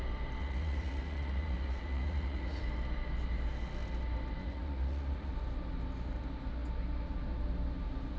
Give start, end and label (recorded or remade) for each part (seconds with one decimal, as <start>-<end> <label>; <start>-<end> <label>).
0.0-0.4 recorded; 0.4-2.6 remade; 2.6-4.4 recorded; 4.4-5.3 remade; 5.3-8.2 recorded